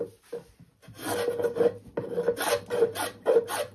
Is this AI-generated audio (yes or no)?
no